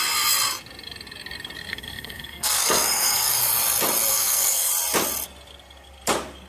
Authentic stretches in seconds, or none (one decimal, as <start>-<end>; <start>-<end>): 0.0-1.7; 3.5-4.1; 4.7-6.5